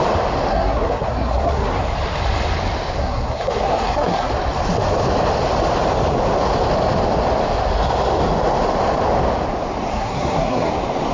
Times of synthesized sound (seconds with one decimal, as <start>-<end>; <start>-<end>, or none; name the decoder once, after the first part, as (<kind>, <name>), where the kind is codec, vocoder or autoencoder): 0.5-1.8 (codec, SNAC); 3.0-4.3; 9.9-10.7